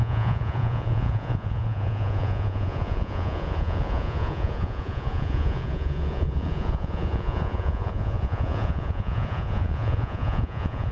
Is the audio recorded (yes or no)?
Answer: no